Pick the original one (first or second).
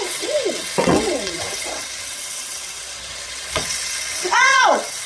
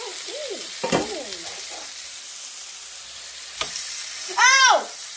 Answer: second